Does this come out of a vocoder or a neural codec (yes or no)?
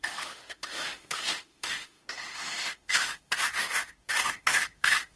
yes